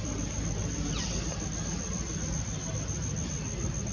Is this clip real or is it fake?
real